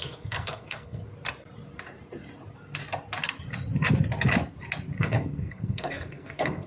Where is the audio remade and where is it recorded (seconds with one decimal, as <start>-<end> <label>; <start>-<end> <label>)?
0.0-1.0 remade; 1.0-5.0 recorded; 5.0-6.7 remade